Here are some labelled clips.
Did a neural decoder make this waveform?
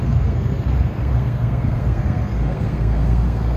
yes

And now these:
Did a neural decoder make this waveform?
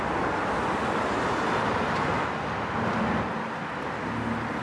no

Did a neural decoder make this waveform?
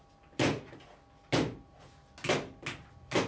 no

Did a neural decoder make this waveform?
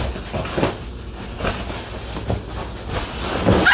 no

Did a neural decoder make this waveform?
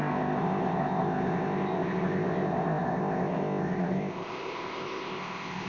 yes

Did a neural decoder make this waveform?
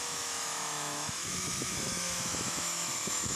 yes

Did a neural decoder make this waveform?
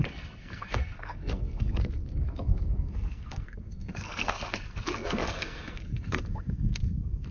yes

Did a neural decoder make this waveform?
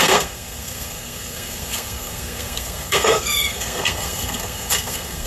yes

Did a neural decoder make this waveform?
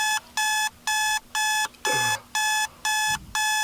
no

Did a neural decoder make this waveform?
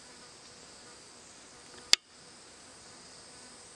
no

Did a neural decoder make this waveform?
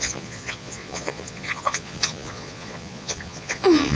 yes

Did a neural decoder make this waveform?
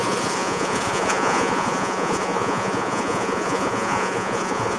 yes